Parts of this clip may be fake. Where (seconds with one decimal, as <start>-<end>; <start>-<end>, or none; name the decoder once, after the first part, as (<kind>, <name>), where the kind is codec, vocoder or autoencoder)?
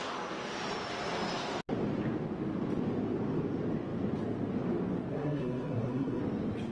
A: 5.1-6.2 (codec, SNAC)